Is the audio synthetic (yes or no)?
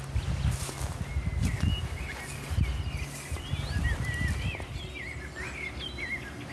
no